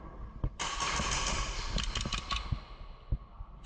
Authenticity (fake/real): real